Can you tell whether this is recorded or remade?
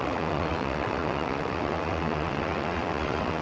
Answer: remade